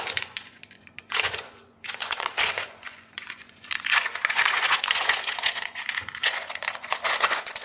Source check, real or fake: fake